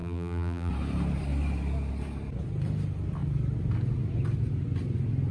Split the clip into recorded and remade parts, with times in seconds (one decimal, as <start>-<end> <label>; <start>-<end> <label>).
0.0-0.7 remade; 0.7-5.3 recorded